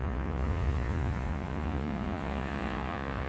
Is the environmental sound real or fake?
fake